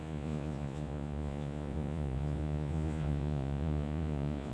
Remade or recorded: remade